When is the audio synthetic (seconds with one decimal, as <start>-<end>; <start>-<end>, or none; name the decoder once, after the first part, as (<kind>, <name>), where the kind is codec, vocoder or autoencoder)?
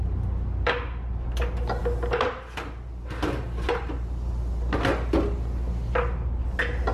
none